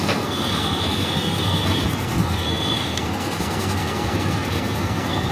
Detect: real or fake fake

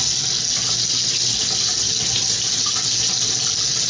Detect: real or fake real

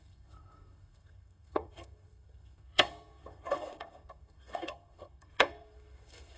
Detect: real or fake fake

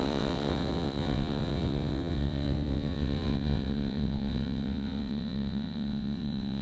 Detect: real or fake fake